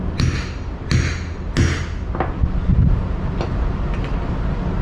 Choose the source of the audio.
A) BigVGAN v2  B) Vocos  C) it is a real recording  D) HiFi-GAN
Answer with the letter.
C